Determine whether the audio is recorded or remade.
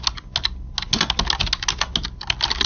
recorded